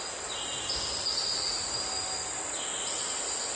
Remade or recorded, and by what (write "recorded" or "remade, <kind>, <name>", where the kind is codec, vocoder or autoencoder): recorded